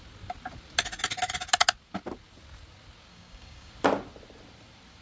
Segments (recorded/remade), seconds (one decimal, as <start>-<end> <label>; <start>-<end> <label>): 0.0-3.1 recorded; 3.1-3.7 remade; 3.7-5.0 recorded